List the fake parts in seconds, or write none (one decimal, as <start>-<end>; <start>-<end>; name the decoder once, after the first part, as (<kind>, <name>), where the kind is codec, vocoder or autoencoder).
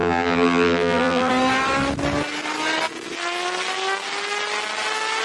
0.0-1.3 (vocoder, BigVGAN v2)